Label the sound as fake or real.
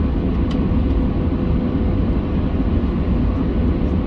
real